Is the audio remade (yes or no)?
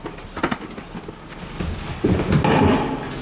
no